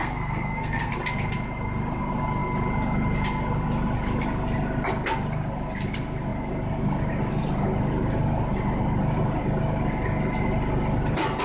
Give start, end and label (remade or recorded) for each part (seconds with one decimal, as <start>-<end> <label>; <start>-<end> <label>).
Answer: 0.0-0.9 remade; 0.9-11.4 recorded